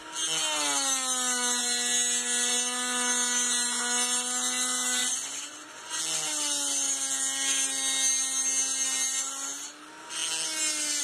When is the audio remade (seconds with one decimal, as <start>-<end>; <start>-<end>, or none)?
5.0-6.0